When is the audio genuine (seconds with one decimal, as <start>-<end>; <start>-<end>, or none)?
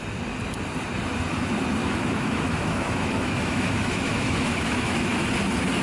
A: 0.0-1.8; 5.3-5.8